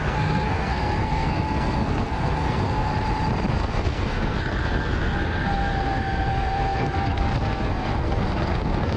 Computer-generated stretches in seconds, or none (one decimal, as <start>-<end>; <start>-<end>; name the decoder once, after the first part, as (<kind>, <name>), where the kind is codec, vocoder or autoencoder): 0.0-2.9 (codec, SNAC); 3.5-9.0